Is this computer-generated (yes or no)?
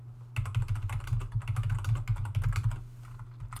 no